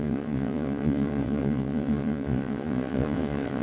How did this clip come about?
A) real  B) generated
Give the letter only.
B